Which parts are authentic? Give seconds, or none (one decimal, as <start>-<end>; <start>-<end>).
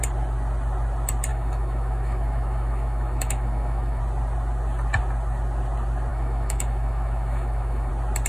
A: 0.0-1.3; 4.0-6.1; 7.9-8.3